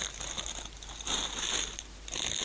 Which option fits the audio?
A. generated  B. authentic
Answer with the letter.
B